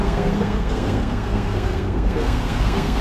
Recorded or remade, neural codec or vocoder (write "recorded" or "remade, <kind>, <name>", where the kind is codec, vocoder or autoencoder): remade, codec, SNAC